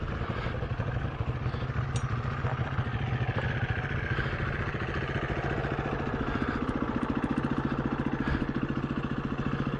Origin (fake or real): real